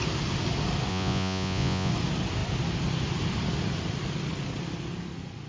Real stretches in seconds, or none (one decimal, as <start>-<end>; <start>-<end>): 0.0-0.9; 1.9-5.5